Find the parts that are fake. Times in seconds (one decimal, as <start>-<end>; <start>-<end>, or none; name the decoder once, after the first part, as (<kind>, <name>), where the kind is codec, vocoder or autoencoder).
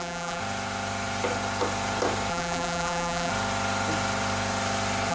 0.0-0.4 (vocoder, BigVGAN v2); 2.3-3.3